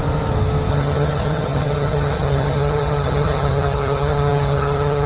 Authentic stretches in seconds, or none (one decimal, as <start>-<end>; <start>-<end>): 0.0-0.7